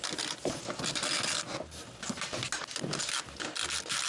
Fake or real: real